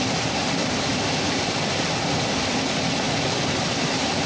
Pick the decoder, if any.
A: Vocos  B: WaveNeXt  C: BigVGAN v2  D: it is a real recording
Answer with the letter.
C